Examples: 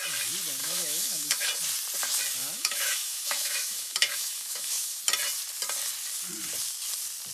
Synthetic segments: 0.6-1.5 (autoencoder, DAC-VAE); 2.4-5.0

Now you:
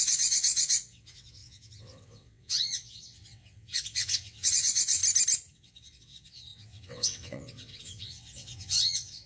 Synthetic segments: 0.0-5.0 (vocoder, WaveNeXt); 5.5-9.3

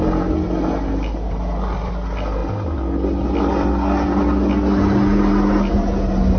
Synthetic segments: none

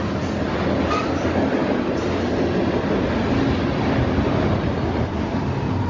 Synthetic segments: 0.0-1.6 (vocoder, BigVGAN v2); 5.1-5.9

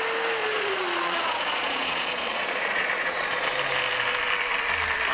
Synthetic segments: 0.4-3.5 (vocoder, Vocos)

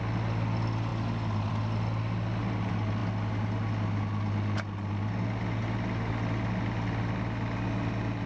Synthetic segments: none